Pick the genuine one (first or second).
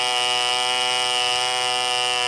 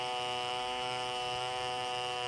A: first